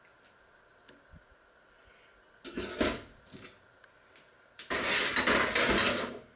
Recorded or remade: recorded